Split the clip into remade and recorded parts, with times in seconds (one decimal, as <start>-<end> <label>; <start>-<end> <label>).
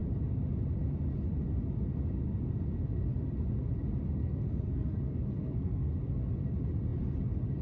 0.0-4.2 recorded; 4.2-5.9 remade; 5.9-7.6 recorded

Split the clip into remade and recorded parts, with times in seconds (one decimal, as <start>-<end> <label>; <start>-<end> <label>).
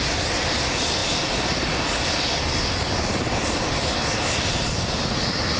0.0-5.6 recorded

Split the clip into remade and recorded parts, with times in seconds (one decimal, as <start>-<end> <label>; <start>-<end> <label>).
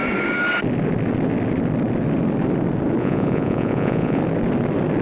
0.0-3.0 recorded; 3.0-4.2 remade; 4.2-5.0 recorded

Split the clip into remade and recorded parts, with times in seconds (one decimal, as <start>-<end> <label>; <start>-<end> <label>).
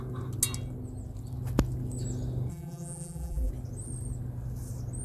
0.0-2.5 recorded; 2.5-3.5 remade; 3.5-5.0 recorded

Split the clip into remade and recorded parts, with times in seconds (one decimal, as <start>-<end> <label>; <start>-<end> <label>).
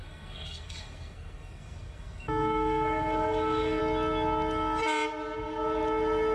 0.0-3.8 remade; 3.8-6.3 recorded